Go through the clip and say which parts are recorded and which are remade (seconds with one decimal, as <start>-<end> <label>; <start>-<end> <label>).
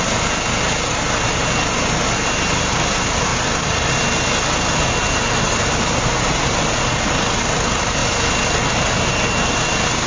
0.0-10.1 recorded